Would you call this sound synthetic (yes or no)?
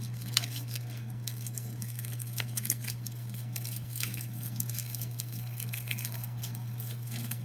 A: yes